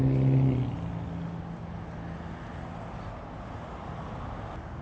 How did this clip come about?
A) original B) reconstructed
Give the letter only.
A